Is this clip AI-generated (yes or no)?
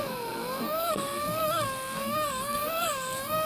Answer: yes